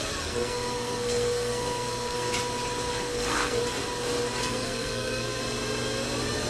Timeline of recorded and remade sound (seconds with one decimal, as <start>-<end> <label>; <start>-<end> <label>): 0.0-2.3 remade; 2.3-2.9 recorded; 2.9-3.6 remade; 3.6-4.4 recorded; 4.4-5.4 remade; 5.4-6.5 recorded